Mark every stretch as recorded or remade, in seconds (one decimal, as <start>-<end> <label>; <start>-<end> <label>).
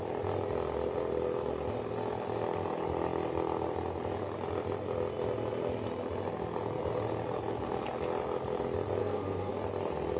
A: 0.0-9.0 recorded; 9.0-9.5 remade; 9.5-10.2 recorded